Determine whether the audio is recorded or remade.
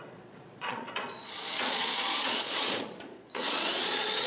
remade